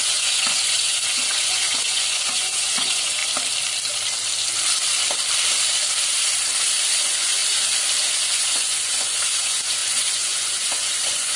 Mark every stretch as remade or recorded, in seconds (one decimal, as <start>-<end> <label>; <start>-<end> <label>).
0.0-3.2 remade; 3.2-7.0 recorded; 7.0-7.4 remade; 7.4-8.2 recorded; 8.2-11.4 remade